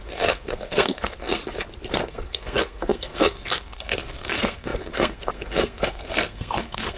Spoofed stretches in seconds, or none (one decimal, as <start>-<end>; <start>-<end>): 0.0-1.4; 1.9-7.0